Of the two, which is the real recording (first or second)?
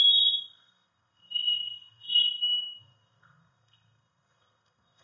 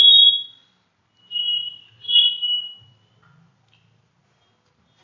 second